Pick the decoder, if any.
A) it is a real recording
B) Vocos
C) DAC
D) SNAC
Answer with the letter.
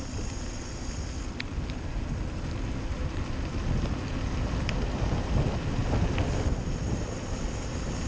A